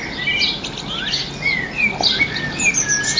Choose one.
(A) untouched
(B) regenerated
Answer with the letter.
A